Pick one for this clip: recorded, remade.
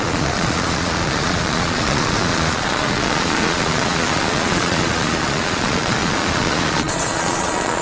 remade